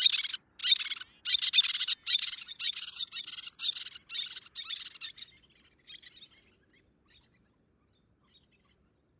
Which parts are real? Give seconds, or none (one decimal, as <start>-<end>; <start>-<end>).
0.0-1.8; 3.2-9.2